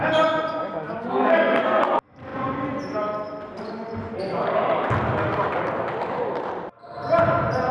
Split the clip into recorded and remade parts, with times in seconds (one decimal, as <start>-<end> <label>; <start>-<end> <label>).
0.0-1.0 recorded; 1.0-1.8 remade; 1.8-7.7 recorded